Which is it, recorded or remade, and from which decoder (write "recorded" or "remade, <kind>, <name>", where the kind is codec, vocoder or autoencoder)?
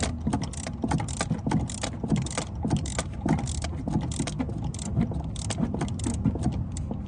recorded